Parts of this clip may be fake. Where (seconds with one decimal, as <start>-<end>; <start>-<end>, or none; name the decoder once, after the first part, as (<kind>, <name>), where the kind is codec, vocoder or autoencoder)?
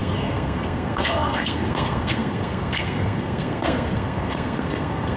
0.0-5.2 (codec, SNAC)